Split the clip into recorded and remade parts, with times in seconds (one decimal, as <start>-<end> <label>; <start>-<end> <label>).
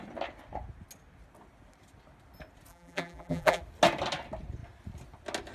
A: 0.0-2.7 recorded; 2.7-3.6 remade; 3.6-5.5 recorded